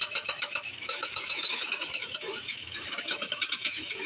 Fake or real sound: fake